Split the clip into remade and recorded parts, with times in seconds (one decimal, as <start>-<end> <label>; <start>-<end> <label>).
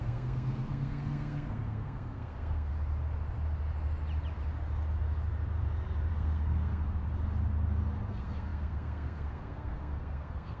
0.0-2.7 remade; 2.7-6.1 recorded; 6.1-7.0 remade; 7.0-8.1 recorded; 8.1-10.6 remade